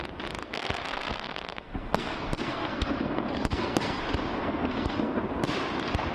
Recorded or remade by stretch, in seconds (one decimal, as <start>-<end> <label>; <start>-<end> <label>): 0.0-0.4 recorded; 0.4-4.0 remade; 4.0-4.4 recorded; 4.4-5.2 remade; 5.2-6.1 recorded